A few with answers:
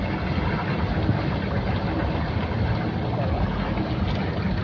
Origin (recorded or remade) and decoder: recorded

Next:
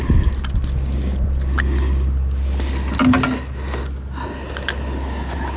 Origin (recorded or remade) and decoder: recorded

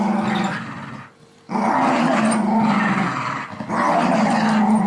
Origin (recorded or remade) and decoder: recorded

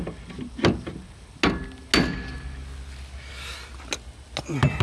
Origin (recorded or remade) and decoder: recorded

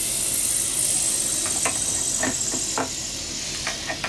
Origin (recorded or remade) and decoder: recorded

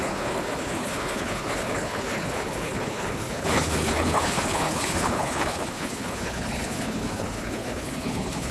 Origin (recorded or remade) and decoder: remade, codec, HILCodec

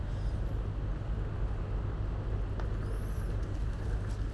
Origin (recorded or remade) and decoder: recorded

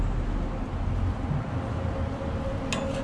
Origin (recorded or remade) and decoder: recorded